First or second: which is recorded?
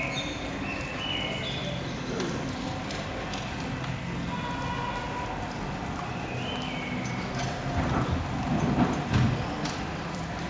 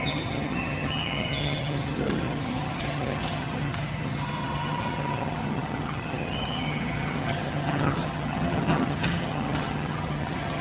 first